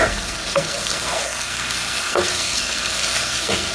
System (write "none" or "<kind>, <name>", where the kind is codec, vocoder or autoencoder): codec, SNAC